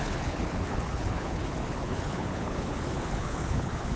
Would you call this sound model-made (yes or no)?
yes